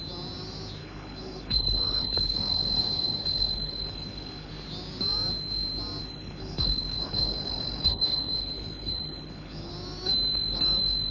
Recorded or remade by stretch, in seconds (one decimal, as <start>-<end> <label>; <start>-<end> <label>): 0.0-0.8 recorded; 0.8-4.5 remade; 4.5-6.0 recorded; 6.0-9.7 remade; 9.7-11.1 recorded